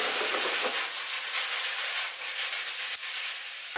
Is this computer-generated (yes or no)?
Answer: no